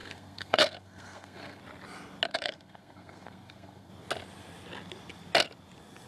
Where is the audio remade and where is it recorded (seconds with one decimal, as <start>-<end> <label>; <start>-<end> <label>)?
0.0-1.6 remade; 1.6-2.3 recorded; 2.3-3.9 remade; 3.9-6.1 recorded